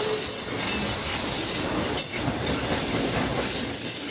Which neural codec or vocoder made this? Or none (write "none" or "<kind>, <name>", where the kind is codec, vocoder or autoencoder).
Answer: none